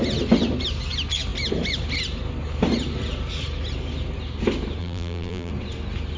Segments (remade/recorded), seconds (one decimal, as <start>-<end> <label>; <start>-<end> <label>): 0.0-4.8 recorded; 4.8-5.5 remade; 5.5-6.2 recorded